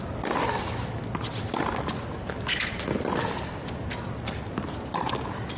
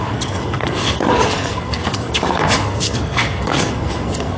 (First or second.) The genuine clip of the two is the first